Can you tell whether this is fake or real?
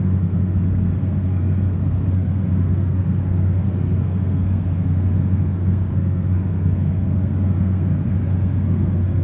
fake